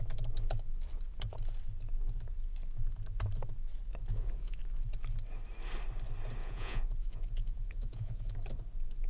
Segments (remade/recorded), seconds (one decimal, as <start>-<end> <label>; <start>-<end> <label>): 0.0-4.1 recorded; 4.1-4.6 remade; 4.6-6.4 recorded; 6.4-8.3 remade; 8.3-9.1 recorded